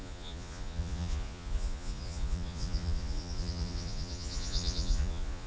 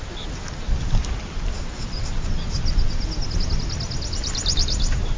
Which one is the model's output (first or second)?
first